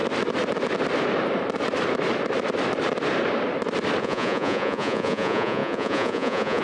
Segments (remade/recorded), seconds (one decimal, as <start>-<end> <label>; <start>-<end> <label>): 0.0-4.0 recorded; 4.0-6.6 remade